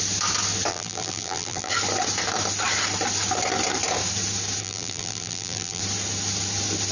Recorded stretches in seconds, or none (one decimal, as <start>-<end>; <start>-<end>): 0.0-0.7; 1.7-4.6; 5.8-6.9